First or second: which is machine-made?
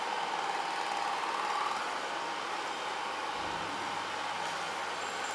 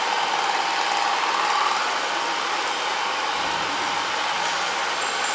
second